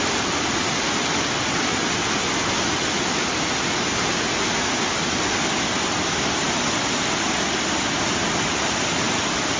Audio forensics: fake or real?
real